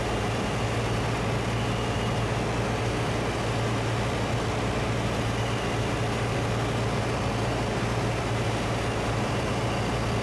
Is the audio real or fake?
real